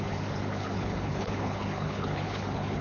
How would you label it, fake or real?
fake